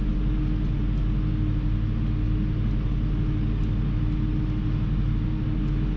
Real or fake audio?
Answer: real